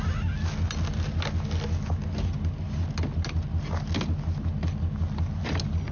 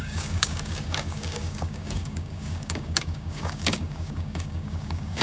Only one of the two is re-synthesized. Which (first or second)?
second